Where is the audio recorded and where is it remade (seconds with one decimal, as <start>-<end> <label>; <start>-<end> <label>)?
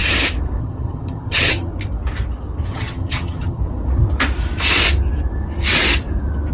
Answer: 0.0-0.6 recorded; 0.6-1.7 remade; 1.7-2.7 recorded; 2.7-3.6 remade; 3.6-6.5 recorded